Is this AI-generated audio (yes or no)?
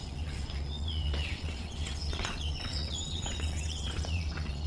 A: yes